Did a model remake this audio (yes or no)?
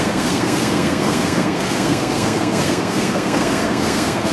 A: yes